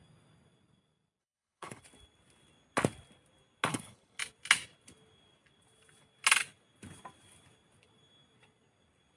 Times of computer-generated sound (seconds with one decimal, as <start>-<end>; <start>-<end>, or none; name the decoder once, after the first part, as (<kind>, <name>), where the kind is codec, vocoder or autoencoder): 1.2-1.8 (codec, HILCodec); 3.7-4.2